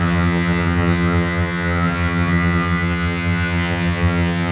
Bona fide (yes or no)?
no